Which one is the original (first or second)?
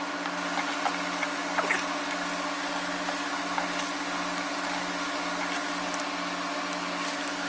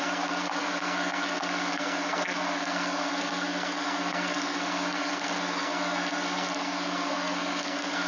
first